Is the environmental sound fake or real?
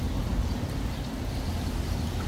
real